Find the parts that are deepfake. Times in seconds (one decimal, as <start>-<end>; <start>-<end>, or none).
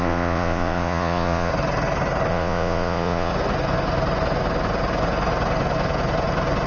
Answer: 0.0-1.5; 2.3-3.3